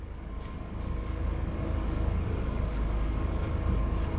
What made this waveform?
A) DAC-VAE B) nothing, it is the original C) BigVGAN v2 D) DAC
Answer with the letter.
D